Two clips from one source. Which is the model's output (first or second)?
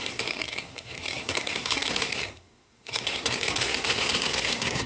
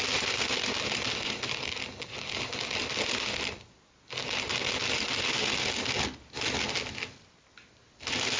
first